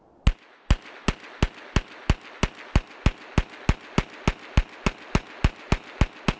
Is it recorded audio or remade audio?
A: recorded